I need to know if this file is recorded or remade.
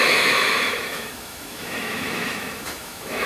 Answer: remade